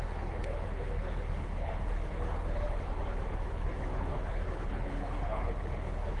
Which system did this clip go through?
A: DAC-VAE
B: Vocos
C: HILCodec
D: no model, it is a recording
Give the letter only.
C